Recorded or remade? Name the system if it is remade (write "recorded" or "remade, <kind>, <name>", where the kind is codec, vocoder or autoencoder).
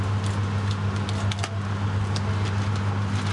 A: recorded